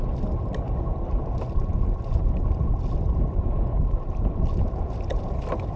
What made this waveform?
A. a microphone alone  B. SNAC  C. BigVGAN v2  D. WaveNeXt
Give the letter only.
A